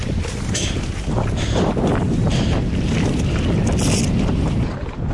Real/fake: real